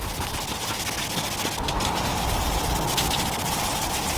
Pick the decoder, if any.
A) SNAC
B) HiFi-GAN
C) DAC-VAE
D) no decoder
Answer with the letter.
D